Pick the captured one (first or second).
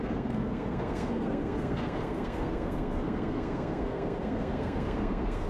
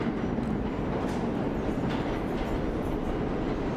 second